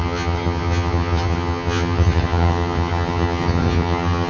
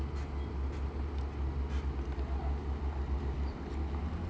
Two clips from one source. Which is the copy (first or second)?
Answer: first